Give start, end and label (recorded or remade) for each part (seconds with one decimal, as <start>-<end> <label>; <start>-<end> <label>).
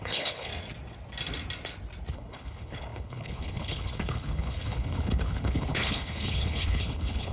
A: 0.0-0.5 remade; 0.5-2.1 recorded; 2.1-7.3 remade